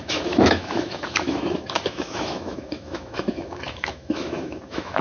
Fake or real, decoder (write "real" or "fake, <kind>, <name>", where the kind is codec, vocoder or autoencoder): fake, autoencoder, DAC-VAE